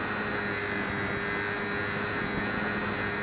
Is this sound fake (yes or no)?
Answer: no